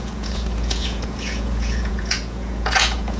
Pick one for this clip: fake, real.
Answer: fake